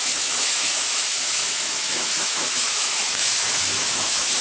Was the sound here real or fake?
fake